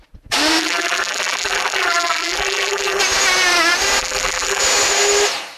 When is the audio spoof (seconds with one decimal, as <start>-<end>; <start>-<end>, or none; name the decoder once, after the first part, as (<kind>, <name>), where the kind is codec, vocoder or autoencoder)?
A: 0.6-3.0 (vocoder, BigVGAN v2); 4.0-4.6